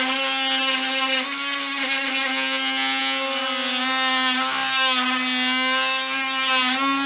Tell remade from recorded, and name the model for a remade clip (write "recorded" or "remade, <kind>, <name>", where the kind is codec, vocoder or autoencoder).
recorded